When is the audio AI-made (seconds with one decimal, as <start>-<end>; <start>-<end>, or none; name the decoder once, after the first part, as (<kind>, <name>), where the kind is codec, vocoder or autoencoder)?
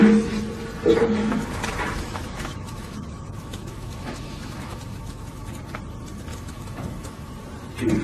1.2-5.5 (autoencoder, DAC-VAE); 6.3-7.3